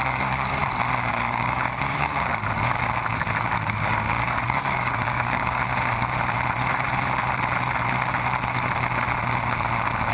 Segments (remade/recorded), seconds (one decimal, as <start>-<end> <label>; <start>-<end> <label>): 0.0-0.6 remade; 0.6-1.1 recorded; 1.1-2.3 remade; 2.3-3.4 recorded; 3.4-5.6 remade; 5.6-10.1 recorded